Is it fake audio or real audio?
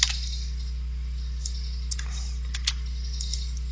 real